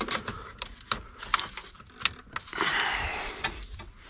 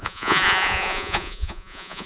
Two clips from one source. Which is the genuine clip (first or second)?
first